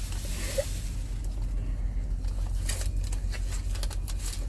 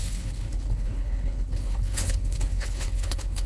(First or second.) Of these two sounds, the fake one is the second